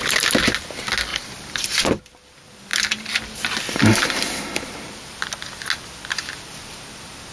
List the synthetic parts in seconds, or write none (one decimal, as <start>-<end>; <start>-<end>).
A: 1.1-2.0